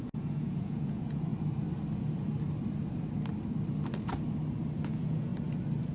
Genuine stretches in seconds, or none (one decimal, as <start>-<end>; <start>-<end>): 1.3-4.8; 5.3-5.9